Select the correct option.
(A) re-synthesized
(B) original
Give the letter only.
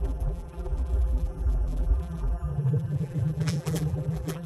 A